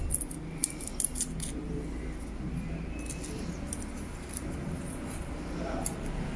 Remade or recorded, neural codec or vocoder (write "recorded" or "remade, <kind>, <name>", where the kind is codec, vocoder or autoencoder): recorded